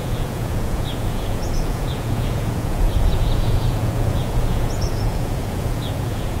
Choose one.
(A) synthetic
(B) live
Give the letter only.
A